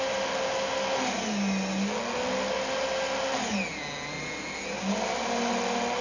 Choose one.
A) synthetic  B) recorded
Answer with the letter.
B